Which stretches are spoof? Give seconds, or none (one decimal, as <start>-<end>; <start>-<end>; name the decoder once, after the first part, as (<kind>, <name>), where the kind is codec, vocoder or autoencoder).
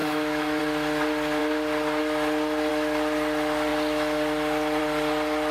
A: 0.0-0.6 (autoencoder, DAC-VAE)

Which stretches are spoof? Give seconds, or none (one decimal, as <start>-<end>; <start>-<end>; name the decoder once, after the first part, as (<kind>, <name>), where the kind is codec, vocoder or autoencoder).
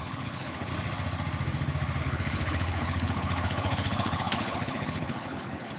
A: 0.0-0.7 (codec, HILCodec); 2.0-5.8